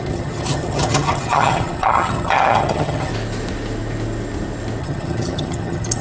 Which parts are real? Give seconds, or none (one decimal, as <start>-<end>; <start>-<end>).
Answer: 3.1-4.8